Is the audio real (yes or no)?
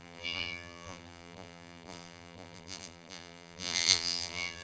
no